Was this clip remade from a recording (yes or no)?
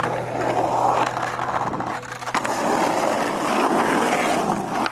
no